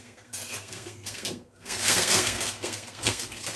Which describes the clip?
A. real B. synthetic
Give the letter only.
B